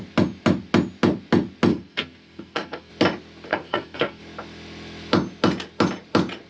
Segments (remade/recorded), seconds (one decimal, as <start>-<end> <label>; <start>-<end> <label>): 0.0-1.7 recorded; 1.7-2.9 remade; 2.9-3.5 recorded; 3.5-4.2 remade; 4.2-6.5 recorded